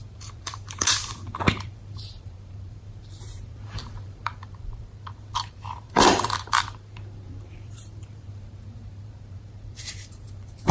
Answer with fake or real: fake